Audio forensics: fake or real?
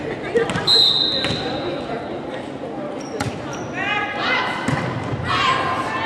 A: real